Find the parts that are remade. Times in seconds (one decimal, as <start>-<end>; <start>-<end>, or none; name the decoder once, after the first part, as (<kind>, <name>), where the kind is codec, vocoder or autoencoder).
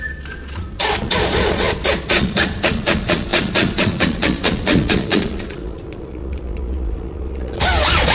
0.0-8.1 (vocoder, Vocos)